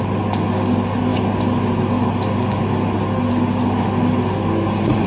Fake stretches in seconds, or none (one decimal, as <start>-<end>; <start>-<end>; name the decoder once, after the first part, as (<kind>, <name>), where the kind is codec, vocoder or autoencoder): none